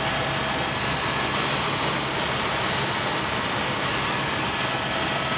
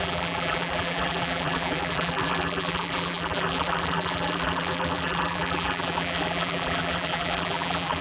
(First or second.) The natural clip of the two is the first